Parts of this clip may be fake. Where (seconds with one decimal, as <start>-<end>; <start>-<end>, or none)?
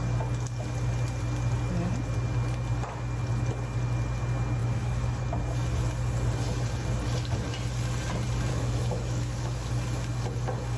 4.6-5.2; 8.5-9.7